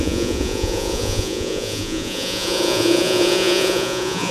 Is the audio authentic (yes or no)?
no